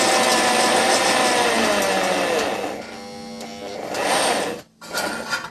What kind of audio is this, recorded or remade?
recorded